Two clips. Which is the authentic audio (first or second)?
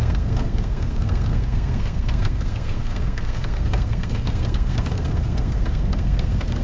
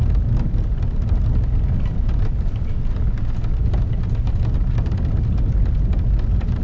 second